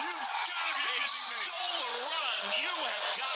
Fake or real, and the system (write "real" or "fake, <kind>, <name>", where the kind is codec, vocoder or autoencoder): fake, vocoder, Vocos